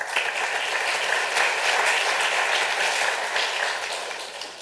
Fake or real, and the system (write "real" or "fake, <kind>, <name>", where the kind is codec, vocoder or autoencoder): real